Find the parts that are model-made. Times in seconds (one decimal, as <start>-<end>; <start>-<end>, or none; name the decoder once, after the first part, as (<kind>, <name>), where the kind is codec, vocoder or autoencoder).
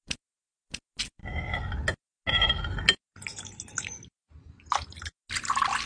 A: none